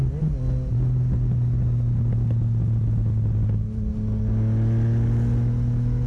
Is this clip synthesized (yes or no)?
no